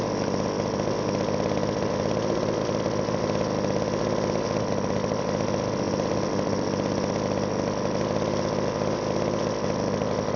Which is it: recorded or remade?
recorded